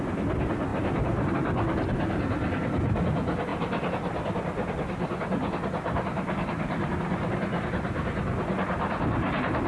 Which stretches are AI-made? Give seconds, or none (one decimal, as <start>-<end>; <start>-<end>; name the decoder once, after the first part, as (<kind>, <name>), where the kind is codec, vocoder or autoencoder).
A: none